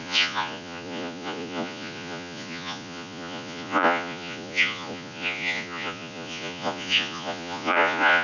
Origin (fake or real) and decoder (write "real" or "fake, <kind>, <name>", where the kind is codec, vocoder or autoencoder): fake, vocoder, Vocos